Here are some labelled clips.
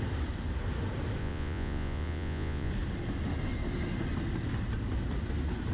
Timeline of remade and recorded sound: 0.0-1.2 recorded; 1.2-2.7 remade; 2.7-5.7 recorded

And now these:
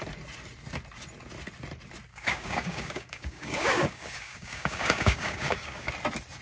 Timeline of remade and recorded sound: 0.0-2.1 recorded; 2.1-5.9 remade; 5.9-6.4 recorded

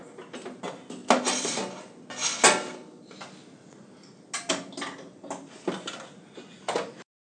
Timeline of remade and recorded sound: 0.0-7.2 recorded

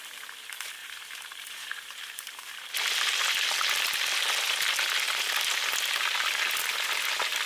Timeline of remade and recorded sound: 0.0-0.8 recorded; 0.8-2.7 remade; 2.7-7.5 recorded

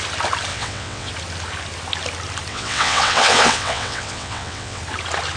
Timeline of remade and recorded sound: 0.0-0.5 recorded; 0.5-1.1 remade; 1.1-2.5 recorded; 2.5-4.8 remade; 4.8-5.4 recorded

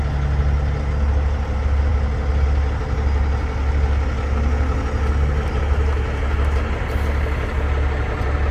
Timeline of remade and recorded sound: 0.0-8.5 recorded

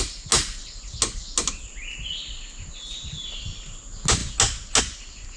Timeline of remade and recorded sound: 0.0-5.4 recorded